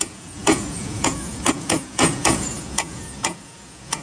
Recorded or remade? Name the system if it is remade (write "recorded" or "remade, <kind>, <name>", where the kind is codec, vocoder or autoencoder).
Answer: remade, vocoder, Vocos